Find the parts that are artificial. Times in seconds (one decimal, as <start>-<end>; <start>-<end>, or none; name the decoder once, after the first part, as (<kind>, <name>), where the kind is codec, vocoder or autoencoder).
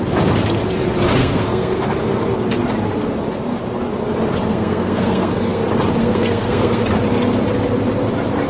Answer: 1.2-1.8 (codec, SNAC); 4.5-5.6; 6.0-6.8